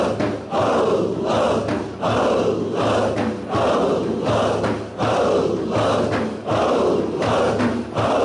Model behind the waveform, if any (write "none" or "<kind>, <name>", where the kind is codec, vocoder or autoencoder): none